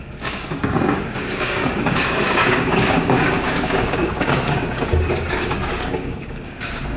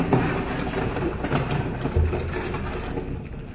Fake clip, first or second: first